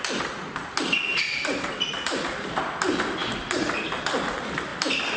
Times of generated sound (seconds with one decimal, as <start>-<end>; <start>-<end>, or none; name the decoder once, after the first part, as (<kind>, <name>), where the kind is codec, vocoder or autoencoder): 1.1-2.6 (vocoder, BigVGAN v2)